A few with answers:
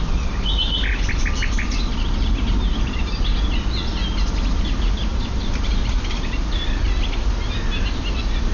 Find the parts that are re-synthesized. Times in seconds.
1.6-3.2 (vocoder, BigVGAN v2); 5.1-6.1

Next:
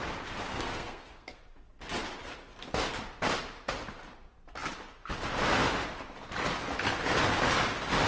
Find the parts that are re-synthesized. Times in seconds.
0.5-1.4 (codec, SNAC)